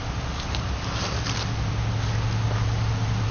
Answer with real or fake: real